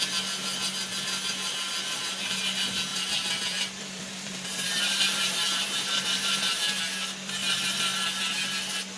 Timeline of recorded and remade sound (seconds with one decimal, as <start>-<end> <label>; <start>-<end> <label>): 0.0-2.9 recorded; 2.9-6.8 remade; 6.8-9.0 recorded